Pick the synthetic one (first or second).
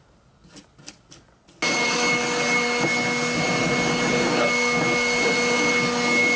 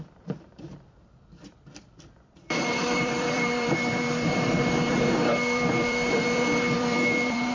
second